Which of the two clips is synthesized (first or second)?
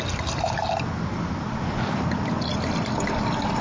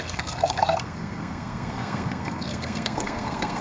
second